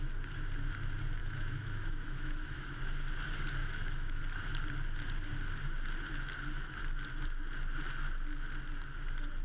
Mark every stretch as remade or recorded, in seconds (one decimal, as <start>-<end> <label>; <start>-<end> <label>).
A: 0.0-1.2 recorded; 1.2-2.8 remade; 2.8-3.6 recorded; 3.6-4.2 remade; 4.2-9.4 recorded